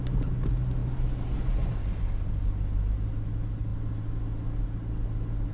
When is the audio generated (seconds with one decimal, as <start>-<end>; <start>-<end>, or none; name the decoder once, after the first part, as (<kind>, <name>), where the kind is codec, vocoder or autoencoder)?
none